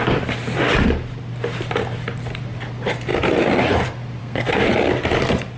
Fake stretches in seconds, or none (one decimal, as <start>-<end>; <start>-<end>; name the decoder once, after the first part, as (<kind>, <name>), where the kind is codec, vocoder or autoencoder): 4.2-4.7 (codec, SNAC)